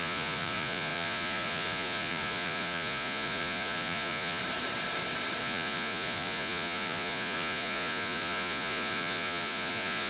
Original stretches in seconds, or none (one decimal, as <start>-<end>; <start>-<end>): 4.4-5.4